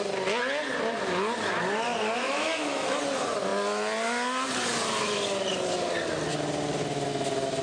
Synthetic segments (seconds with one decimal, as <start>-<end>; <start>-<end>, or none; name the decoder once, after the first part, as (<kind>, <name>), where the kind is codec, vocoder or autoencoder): 2.2-3.0 (autoencoder, DAC-VAE)

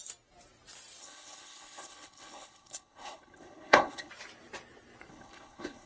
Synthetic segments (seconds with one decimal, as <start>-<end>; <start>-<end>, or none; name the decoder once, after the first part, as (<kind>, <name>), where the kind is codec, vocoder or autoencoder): 1.0-4.1 (codec, HILCodec); 5.1-5.9

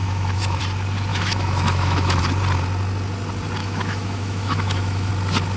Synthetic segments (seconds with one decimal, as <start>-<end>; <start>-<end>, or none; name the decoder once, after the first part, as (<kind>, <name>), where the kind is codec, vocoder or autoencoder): 0.0-0.6 (autoencoder, DAC-VAE); 1.1-2.2; 3.6-5.1

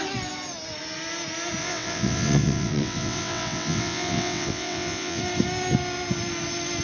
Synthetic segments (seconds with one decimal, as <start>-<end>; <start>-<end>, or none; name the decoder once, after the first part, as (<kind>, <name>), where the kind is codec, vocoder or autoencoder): 1.6-5.2 (vocoder, WaveNeXt)